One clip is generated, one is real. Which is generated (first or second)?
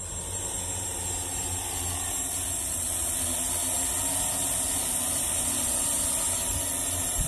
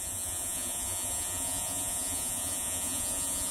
second